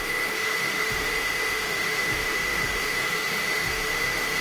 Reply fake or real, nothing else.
fake